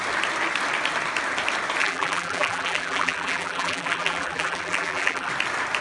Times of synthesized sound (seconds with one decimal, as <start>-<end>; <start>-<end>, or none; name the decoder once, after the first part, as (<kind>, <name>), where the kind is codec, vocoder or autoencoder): 1.8-5.3 (vocoder, BigVGAN v2)